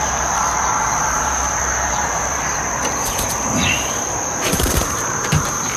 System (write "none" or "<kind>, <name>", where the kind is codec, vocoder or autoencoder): vocoder, BigVGAN v2